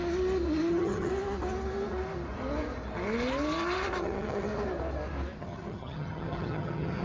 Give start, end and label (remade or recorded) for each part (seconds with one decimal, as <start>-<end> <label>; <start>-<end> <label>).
0.0-0.7 recorded; 0.7-1.1 remade; 1.1-4.0 recorded; 4.0-4.5 remade; 4.5-5.4 recorded; 5.4-7.0 remade